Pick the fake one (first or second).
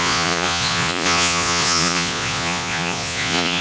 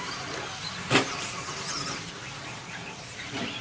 first